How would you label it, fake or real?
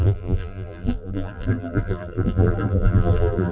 fake